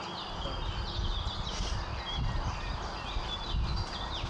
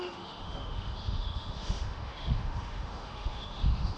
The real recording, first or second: first